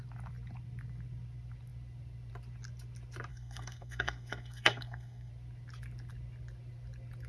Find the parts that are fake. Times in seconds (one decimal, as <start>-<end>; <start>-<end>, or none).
3.3-5.3